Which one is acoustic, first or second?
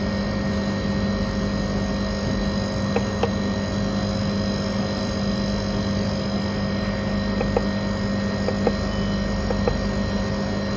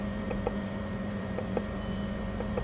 first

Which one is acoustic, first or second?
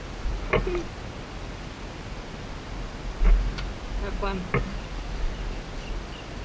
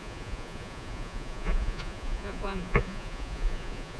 first